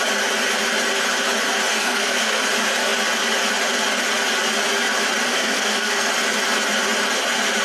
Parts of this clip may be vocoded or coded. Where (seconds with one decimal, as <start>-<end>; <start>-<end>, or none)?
1.7-2.4; 5.3-6.1